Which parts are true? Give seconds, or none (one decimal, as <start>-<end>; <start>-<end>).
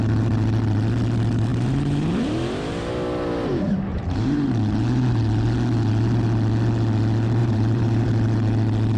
0.0-1.5; 2.9-3.9; 4.5-7.4; 8.1-9.0